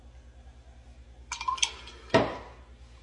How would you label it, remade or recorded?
recorded